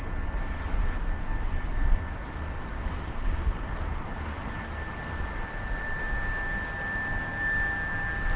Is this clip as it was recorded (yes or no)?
yes